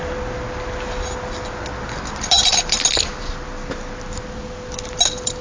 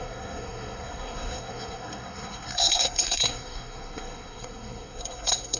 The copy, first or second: second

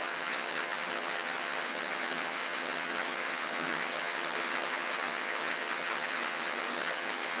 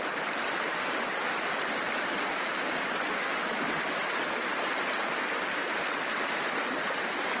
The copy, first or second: first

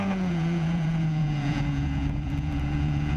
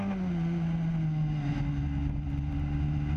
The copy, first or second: first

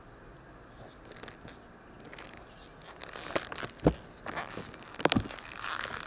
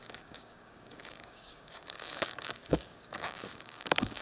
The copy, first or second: second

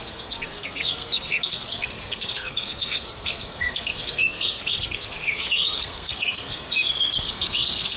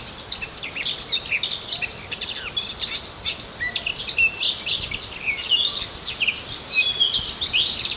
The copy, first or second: first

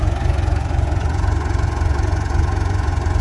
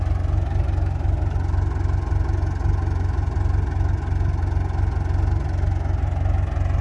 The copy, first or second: first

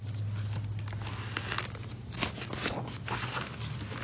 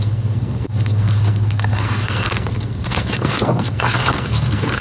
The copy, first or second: second